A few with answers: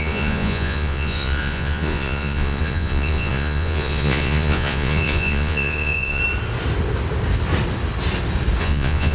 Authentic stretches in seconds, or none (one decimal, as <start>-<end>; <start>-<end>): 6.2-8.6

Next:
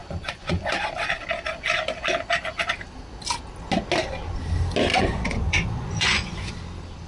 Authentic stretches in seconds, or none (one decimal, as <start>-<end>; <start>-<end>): 0.9-4.9; 6.5-7.1

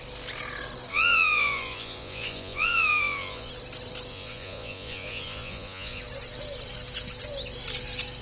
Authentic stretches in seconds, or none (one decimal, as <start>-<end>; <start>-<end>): 0.0-0.9; 3.5-4.1; 6.0-8.2

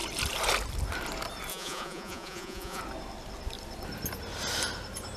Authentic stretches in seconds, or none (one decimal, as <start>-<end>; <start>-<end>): 0.0-1.5; 2.8-5.2

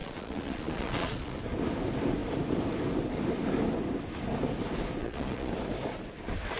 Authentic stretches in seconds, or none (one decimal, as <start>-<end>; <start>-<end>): 1.4-5.0; 5.5-6.6

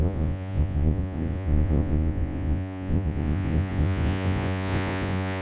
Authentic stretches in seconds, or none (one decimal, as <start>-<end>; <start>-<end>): none